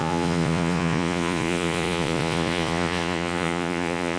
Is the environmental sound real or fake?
fake